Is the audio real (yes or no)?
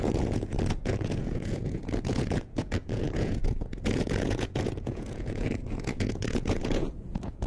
no